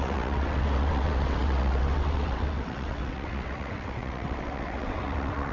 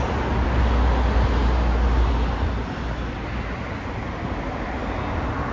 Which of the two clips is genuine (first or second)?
second